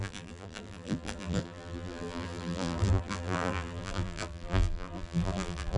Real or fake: fake